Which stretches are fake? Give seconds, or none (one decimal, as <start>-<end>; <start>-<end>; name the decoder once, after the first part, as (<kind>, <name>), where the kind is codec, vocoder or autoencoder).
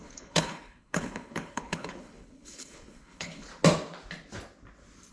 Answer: 0.0-3.5 (codec, HILCodec)